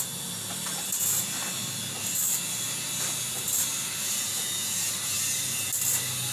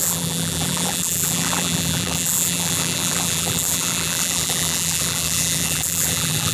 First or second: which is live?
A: first